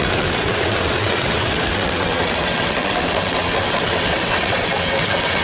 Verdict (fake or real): fake